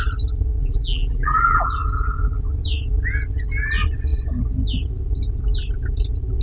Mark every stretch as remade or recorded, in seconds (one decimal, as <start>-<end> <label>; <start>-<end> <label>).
0.0-0.6 recorded; 0.6-1.7 remade; 1.7-6.4 recorded